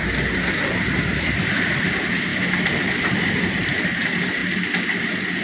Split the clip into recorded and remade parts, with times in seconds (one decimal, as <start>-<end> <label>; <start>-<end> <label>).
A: 0.0-0.5 recorded; 0.5-2.3 remade; 2.3-3.0 recorded; 3.0-4.4 remade; 4.4-5.4 recorded